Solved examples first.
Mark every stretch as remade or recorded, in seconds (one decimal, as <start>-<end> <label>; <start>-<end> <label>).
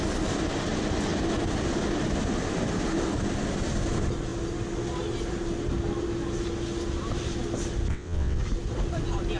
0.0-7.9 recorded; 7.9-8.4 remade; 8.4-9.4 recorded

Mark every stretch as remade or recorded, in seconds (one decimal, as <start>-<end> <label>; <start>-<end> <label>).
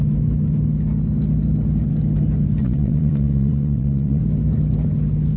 0.0-2.6 recorded; 2.6-4.2 remade; 4.2-5.4 recorded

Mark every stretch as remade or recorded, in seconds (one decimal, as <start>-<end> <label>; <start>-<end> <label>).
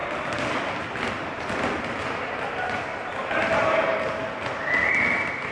0.0-5.5 recorded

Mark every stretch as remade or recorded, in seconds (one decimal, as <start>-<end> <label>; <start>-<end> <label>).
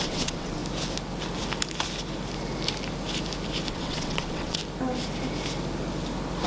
0.0-0.6 remade; 0.6-3.7 recorded; 3.7-4.6 remade; 4.6-6.5 recorded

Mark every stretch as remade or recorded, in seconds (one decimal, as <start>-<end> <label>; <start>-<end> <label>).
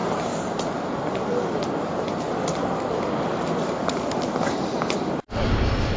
0.0-6.0 recorded